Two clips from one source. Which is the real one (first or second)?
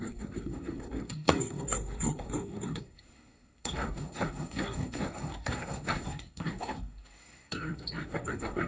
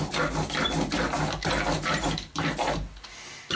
second